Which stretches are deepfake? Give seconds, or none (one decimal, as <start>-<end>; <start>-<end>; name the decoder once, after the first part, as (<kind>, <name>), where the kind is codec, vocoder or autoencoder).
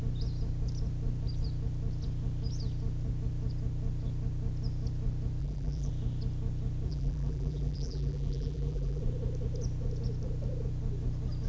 5.4-5.9 (vocoder, BigVGAN v2); 6.9-9.0